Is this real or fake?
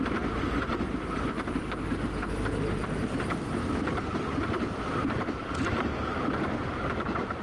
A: real